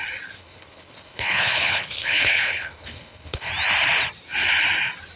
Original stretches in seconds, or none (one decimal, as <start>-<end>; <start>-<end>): 0.0-0.4; 3.5-5.2